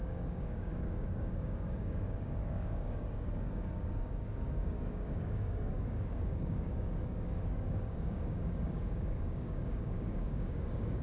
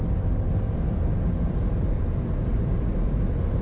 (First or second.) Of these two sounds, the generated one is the first